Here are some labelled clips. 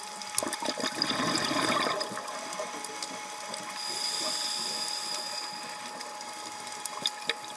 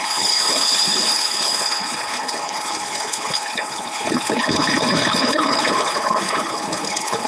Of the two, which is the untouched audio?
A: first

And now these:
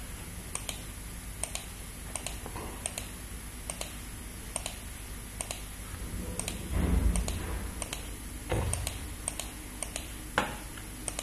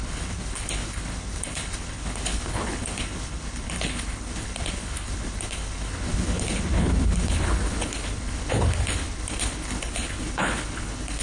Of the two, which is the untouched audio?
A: first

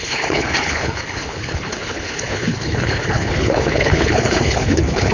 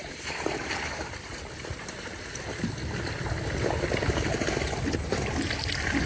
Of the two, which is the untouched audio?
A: second